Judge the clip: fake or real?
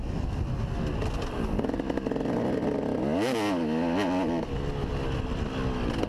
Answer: real